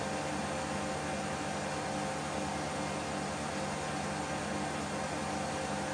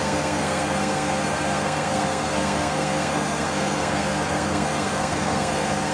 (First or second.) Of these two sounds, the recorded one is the first